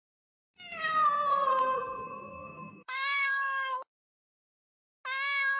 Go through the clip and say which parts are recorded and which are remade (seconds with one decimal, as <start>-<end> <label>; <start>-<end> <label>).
0.0-1.3 recorded; 1.3-4.7 remade; 4.7-5.6 recorded